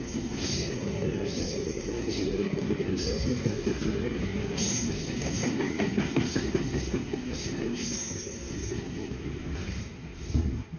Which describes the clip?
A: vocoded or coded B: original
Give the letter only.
A